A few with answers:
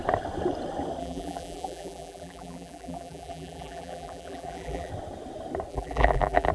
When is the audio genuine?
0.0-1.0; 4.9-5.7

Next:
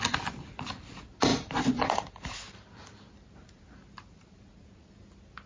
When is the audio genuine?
0.0-1.3; 4.4-5.5

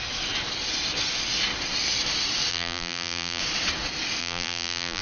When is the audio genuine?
0.0-2.5; 3.4-4.2